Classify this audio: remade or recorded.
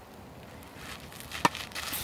recorded